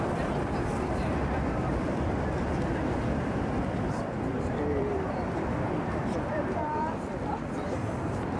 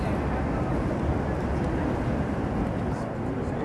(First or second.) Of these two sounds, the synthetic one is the first